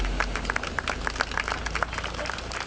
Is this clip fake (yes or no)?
no